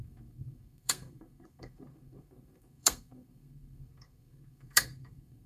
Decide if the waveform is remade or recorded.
remade